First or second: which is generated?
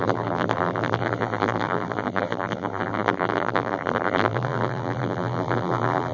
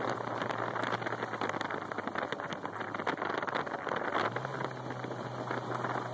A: first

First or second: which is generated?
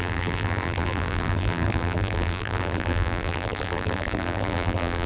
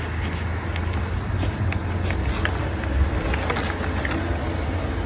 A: first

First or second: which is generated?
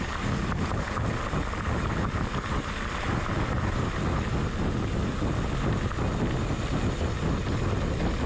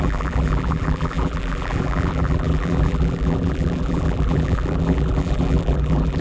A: second